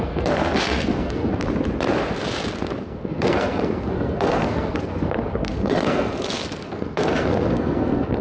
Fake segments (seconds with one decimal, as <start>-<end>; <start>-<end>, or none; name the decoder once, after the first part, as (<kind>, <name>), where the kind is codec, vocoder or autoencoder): 0.0-1.3 (codec, SNAC); 2.8-8.2

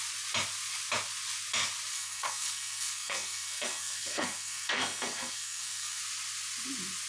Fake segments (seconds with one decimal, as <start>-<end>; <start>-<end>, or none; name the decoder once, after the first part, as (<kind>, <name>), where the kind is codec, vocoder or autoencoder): 1.9-6.0 (codec, SNAC)

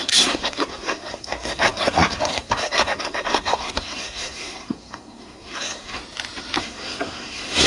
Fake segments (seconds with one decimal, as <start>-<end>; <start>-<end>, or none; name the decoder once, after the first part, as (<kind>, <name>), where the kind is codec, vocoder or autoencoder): 0.0-6.0 (codec, SNAC); 6.6-7.7